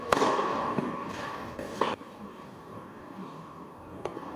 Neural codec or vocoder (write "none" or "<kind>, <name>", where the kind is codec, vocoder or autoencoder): codec, DAC